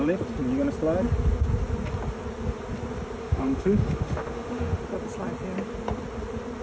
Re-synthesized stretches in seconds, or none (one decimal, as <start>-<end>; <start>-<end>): 3.2-4.8